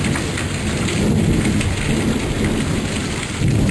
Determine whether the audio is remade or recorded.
recorded